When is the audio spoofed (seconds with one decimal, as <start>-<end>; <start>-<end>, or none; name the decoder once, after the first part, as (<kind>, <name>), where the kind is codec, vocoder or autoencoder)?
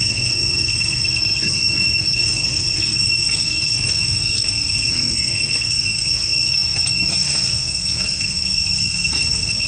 0.0-9.7 (codec, SNAC)